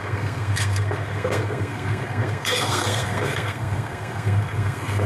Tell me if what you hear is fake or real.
fake